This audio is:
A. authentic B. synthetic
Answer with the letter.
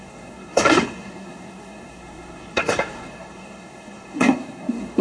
B